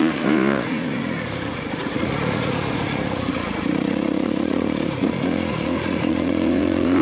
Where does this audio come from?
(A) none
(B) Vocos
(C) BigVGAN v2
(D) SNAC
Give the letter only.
B